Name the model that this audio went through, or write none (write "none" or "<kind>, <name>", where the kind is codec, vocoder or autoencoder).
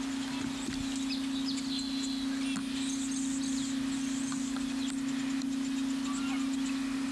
none